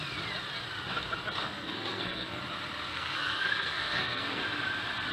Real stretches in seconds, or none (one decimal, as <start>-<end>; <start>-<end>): 0.0-1.4; 2.4-2.9; 4.4-5.1